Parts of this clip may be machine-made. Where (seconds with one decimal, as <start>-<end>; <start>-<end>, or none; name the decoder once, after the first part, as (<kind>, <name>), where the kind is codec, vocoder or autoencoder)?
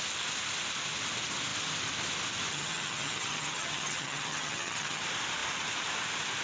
2.5-5.0 (vocoder, HiFi-GAN)